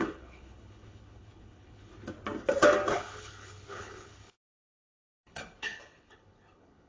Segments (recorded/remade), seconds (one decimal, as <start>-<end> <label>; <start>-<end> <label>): 0.0-1.9 remade; 1.9-2.9 recorded; 2.9-6.9 remade